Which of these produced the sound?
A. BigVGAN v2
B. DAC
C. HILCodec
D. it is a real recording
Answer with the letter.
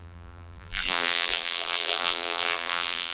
A